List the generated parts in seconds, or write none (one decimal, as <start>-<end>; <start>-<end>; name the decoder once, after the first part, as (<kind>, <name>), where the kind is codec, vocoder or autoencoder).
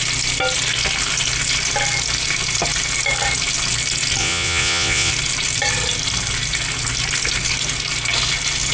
4.2-5.1 (vocoder, Vocos)